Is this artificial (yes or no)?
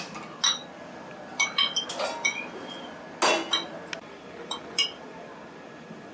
no